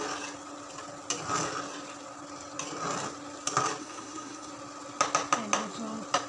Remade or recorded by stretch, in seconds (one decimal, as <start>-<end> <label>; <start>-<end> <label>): 0.0-3.8 recorded; 3.8-4.5 remade; 4.5-6.3 recorded